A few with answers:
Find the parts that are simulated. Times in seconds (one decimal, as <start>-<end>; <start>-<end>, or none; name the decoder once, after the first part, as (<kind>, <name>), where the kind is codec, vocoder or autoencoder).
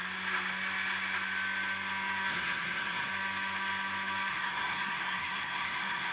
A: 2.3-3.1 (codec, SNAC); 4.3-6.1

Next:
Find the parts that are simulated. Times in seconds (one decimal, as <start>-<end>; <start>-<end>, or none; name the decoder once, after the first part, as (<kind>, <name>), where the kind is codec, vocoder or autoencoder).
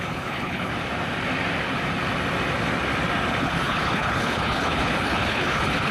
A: 0.0-0.7 (codec, HILCodec); 3.4-5.9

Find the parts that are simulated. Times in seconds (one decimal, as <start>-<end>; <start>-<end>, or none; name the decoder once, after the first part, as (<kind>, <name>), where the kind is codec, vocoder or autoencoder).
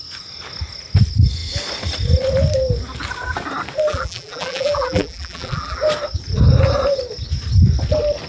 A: 3.9-5.8 (vocoder, BigVGAN v2)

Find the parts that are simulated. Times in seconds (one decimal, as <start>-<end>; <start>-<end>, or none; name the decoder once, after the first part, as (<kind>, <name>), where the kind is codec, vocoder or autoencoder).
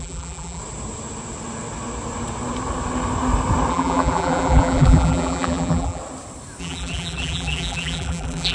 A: 0.0-0.6 (vocoder, BigVGAN v2); 3.7-6.0; 6.6-8.5